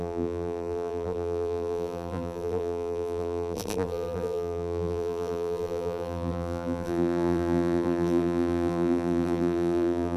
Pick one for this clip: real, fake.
fake